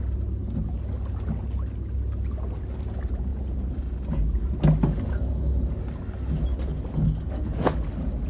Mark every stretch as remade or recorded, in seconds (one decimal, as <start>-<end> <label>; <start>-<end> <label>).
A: 0.0-8.3 recorded